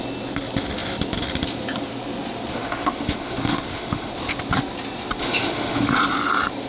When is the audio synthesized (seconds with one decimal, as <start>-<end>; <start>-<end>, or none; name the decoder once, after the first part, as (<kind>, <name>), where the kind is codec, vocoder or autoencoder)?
2.5-4.1 (autoencoder, DAC-VAE); 5.2-6.0